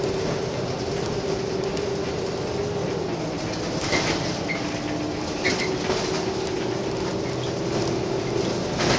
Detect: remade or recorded recorded